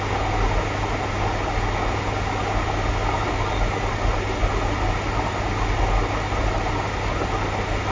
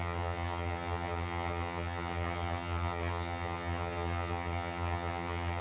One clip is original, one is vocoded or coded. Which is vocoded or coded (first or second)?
second